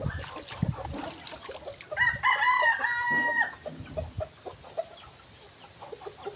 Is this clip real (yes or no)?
yes